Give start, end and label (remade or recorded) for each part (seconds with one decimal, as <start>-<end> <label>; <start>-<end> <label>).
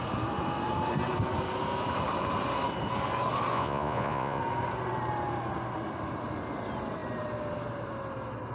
0.0-3.5 recorded; 3.5-4.4 remade; 4.4-8.5 recorded